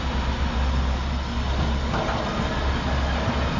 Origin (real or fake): real